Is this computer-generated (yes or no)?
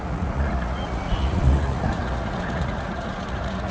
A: yes